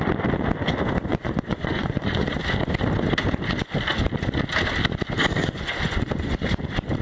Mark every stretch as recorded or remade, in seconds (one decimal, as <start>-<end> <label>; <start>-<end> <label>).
0.0-1.1 recorded; 1.1-2.4 remade; 2.4-5.4 recorded; 5.4-6.5 remade; 6.5-7.0 recorded